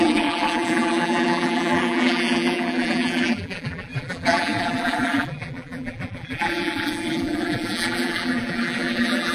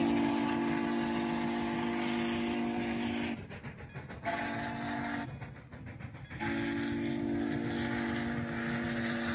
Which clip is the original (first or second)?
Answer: second